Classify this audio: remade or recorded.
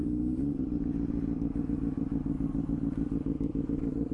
remade